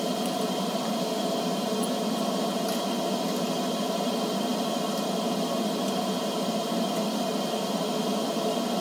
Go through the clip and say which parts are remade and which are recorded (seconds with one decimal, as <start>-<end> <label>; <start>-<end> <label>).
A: 0.0-8.8 recorded